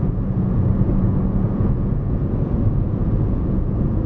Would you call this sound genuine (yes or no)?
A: no